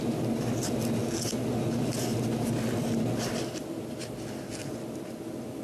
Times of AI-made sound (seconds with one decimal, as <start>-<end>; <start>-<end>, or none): none